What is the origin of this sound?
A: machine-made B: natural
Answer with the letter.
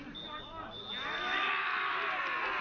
B